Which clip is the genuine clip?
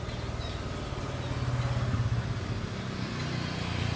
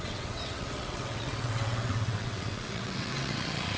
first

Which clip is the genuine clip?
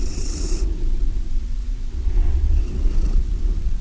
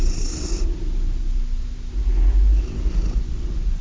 second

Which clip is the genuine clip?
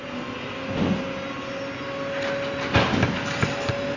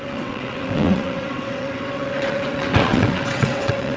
first